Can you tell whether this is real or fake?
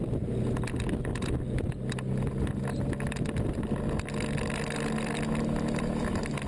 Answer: real